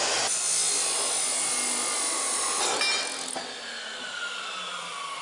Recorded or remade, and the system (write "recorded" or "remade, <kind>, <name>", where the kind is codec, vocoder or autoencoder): recorded